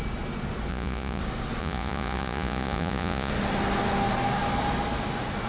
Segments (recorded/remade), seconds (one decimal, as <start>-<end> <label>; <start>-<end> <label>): 0.0-0.7 recorded; 0.7-1.2 remade; 1.2-1.6 recorded; 1.6-3.3 remade; 3.3-5.5 recorded